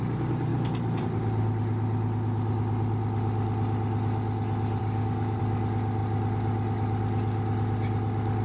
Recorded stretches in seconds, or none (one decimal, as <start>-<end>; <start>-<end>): 0.0-4.8; 5.4-8.4